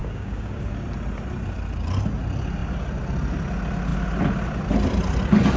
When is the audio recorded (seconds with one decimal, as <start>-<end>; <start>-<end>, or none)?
0.5-5.6